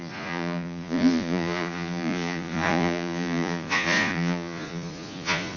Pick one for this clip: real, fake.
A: fake